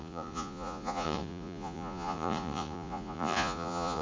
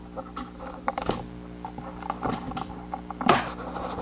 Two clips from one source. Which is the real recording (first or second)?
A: second